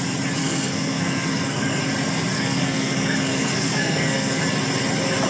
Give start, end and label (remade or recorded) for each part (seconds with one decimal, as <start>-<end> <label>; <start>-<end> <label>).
0.0-0.4 recorded; 0.4-1.8 remade; 1.8-2.3 recorded; 2.3-4.4 remade; 4.4-5.3 recorded